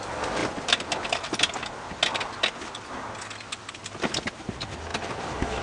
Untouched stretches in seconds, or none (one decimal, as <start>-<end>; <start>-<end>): 0.0-5.6